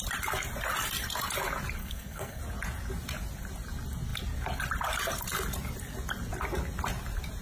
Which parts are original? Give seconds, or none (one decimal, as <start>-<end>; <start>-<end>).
0.0-1.8; 2.4-7.4